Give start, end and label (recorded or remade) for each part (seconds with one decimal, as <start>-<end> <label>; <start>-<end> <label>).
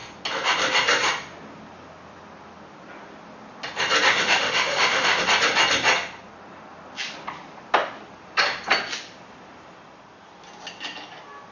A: 0.0-4.1 recorded; 4.1-5.2 remade; 5.2-11.5 recorded